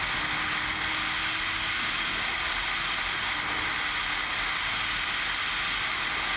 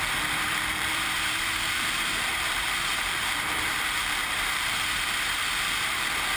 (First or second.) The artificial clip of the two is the second